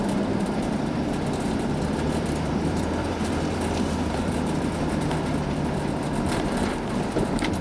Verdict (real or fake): fake